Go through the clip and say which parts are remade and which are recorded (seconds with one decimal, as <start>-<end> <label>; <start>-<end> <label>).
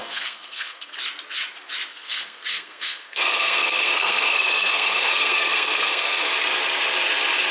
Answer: 0.0-0.9 remade; 0.9-1.9 recorded; 1.9-6.3 remade; 6.3-7.5 recorded